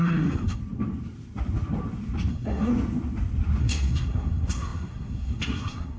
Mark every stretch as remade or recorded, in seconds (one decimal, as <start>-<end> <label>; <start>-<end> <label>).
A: 0.0-0.6 remade; 0.6-2.3 recorded; 2.3-2.7 remade; 2.7-3.6 recorded; 3.6-6.0 remade